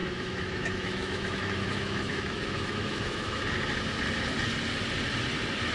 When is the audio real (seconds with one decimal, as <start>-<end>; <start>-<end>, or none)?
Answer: 3.4-5.7